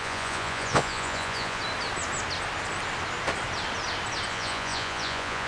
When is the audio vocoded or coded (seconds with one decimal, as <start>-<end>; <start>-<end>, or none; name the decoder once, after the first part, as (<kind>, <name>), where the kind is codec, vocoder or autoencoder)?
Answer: 0.0-1.6 (vocoder, Vocos); 4.3-5.5